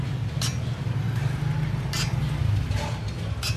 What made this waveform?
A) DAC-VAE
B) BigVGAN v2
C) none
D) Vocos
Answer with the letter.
C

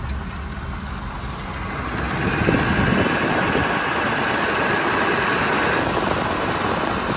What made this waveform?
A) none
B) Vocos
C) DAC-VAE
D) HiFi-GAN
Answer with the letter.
A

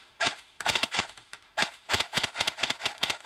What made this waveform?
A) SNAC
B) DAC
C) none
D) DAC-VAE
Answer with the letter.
D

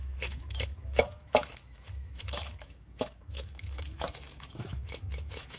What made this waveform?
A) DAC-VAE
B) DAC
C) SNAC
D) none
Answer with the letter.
A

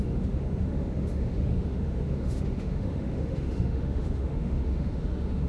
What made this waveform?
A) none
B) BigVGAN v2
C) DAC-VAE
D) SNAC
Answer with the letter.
C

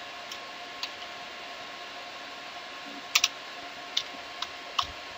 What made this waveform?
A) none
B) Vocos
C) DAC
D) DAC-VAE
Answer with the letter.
A